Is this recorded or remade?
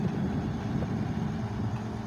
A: recorded